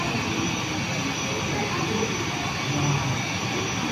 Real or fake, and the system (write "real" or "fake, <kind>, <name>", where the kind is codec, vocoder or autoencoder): real